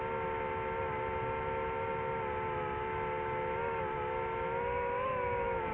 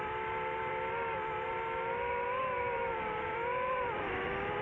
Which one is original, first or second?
first